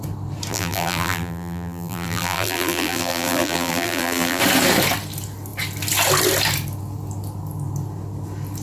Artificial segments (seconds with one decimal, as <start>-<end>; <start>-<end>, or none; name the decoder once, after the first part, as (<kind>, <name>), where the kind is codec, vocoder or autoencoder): 0.5-4.4 (vocoder, BigVGAN v2)